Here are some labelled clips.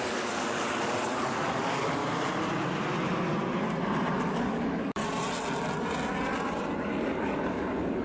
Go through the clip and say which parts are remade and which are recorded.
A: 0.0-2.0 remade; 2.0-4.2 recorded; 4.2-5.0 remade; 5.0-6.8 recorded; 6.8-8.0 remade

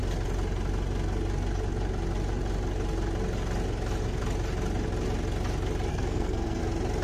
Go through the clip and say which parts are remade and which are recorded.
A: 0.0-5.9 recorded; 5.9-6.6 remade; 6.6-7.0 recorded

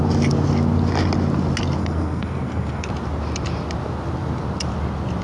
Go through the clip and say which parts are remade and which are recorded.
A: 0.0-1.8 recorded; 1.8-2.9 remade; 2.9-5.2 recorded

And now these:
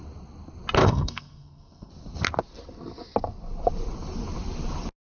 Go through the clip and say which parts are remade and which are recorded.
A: 0.0-0.8 recorded; 0.8-1.9 remade; 1.9-5.1 recorded

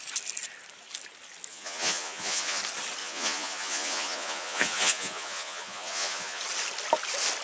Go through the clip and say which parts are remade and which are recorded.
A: 0.0-1.5 recorded; 1.5-2.6 remade; 2.6-3.0 recorded; 3.0-6.4 remade; 6.4-7.4 recorded

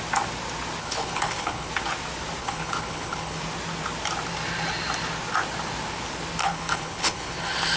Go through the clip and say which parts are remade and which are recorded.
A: 0.0-0.8 recorded; 0.8-1.7 remade; 1.7-2.4 recorded; 2.4-3.4 remade; 3.4-6.4 recorded; 6.4-7.8 remade

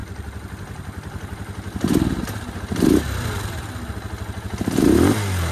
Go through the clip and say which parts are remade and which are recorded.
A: 0.0-5.5 recorded